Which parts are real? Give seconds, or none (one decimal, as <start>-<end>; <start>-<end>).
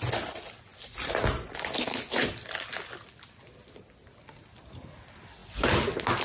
0.0-6.2